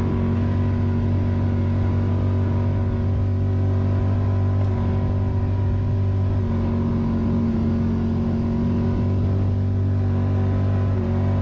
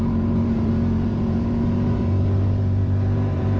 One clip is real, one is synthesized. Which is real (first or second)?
first